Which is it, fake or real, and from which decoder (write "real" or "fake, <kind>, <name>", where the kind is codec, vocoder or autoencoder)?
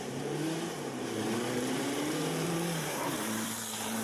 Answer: fake, vocoder, BigVGAN v2